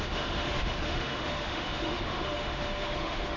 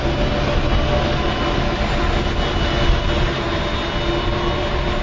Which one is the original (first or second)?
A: second